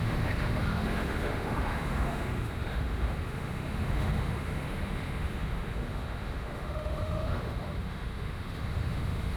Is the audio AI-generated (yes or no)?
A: yes